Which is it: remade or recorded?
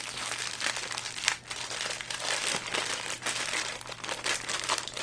recorded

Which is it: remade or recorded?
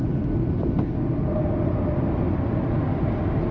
recorded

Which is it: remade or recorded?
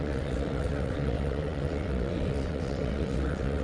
remade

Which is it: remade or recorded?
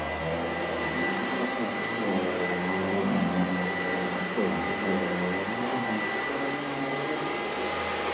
recorded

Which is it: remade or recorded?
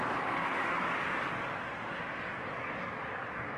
remade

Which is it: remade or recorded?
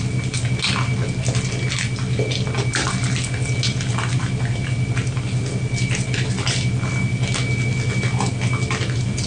recorded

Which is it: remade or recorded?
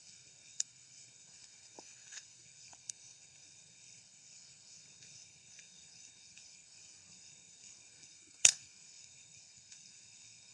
remade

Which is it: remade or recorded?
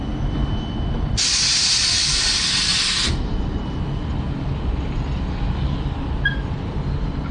recorded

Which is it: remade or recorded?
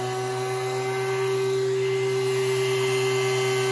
recorded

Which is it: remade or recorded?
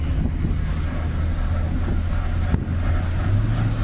recorded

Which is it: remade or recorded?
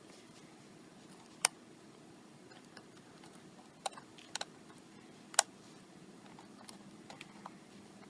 remade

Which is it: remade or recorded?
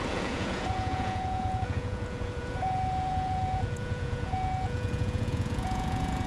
remade